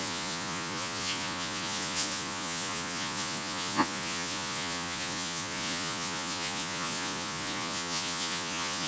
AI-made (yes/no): yes